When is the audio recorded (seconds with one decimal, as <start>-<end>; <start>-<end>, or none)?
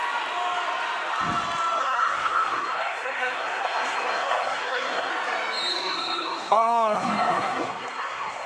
0.0-1.8; 5.1-5.7